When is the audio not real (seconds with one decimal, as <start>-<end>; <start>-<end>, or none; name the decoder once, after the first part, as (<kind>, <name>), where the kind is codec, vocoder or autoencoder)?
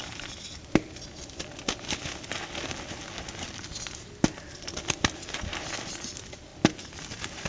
none